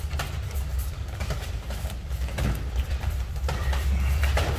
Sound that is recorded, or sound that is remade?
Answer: remade